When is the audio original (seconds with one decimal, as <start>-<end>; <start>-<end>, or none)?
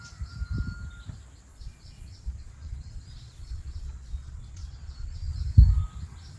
0.0-1.5; 5.3-6.4